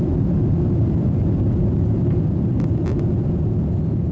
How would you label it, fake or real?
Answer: real